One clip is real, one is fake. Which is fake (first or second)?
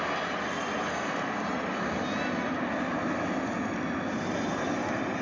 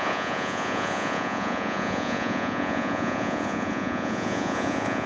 second